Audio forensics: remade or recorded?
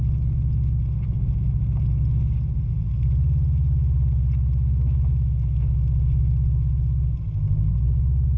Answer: recorded